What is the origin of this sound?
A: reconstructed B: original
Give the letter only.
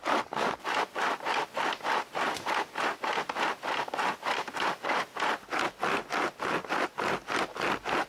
B